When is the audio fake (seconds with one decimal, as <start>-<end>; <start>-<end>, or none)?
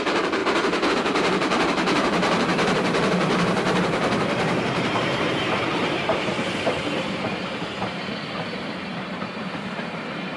0.0-0.4; 0.9-10.4